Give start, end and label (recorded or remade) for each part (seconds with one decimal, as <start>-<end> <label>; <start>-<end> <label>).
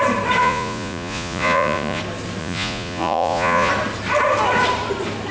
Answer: 0.0-0.4 recorded; 0.4-2.0 remade; 2.0-2.4 recorded; 2.4-3.7 remade; 3.7-5.3 recorded